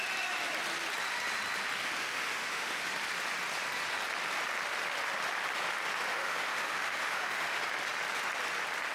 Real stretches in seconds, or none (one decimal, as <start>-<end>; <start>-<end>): 0.0-2.0; 2.8-6.1; 7.6-8.9